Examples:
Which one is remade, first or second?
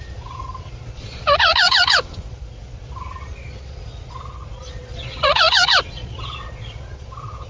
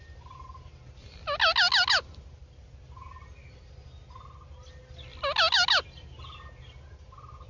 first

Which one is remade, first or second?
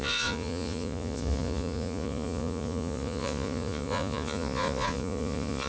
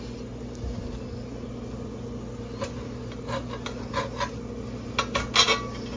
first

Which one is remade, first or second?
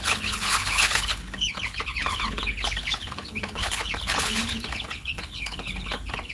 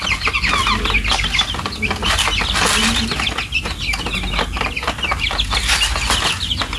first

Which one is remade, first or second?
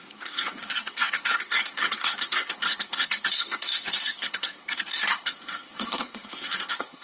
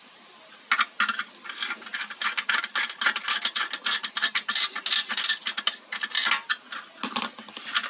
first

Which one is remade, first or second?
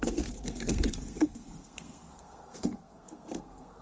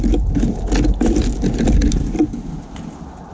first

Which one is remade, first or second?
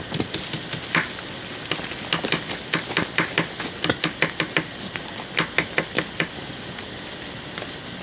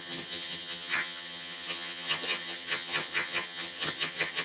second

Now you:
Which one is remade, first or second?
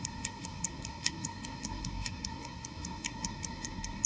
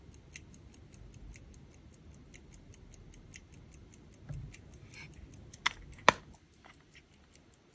first